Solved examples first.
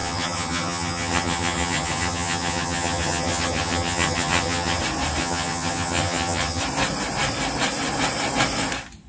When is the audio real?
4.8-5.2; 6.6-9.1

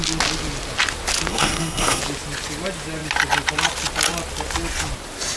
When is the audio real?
0.0-1.3; 2.0-5.4

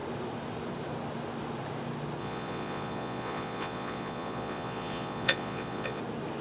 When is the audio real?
0.0-2.2; 6.0-6.4

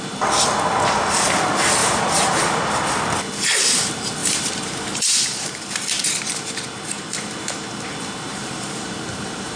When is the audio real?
0.0-1.8; 2.4-4.2; 5.6-8.3

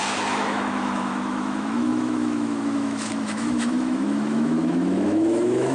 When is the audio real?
none